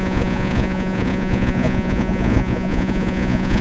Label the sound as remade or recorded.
remade